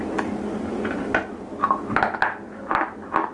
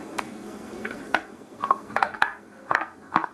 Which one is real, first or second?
first